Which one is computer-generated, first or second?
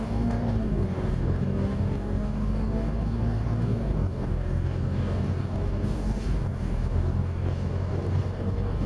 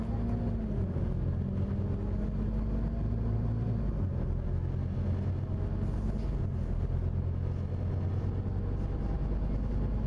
first